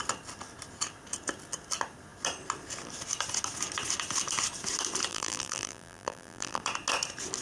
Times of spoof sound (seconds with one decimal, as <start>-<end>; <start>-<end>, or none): 5.1-6.6